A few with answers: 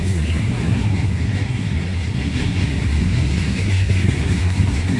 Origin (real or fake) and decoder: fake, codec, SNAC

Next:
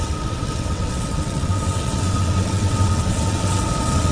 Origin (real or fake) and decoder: fake, vocoder, WaveNeXt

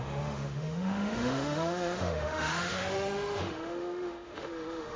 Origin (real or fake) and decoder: fake, autoencoder, DAC-VAE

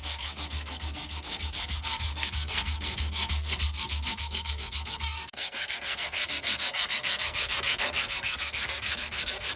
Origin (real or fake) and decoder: fake, codec, SNAC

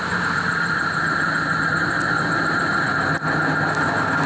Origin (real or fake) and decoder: real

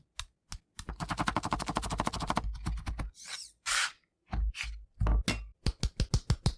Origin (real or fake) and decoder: real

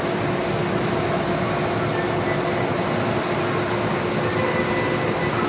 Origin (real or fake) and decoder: real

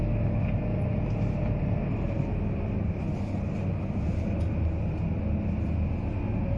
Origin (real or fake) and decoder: real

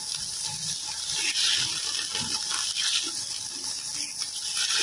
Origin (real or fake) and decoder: real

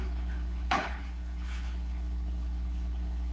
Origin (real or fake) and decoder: fake, codec, HILCodec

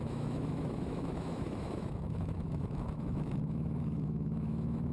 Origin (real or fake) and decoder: fake, autoencoder, DAC-VAE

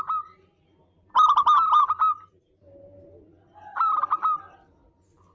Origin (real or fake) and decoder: real